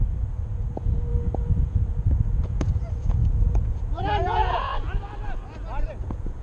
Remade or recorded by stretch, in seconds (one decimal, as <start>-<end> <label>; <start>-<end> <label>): 0.0-1.1 remade; 1.1-1.6 recorded; 1.6-4.7 remade; 4.7-6.0 recorded; 6.0-6.4 remade